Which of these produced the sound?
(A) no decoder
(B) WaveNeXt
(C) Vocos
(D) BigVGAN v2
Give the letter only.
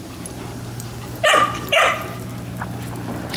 A